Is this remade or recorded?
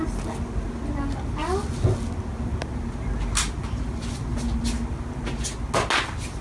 recorded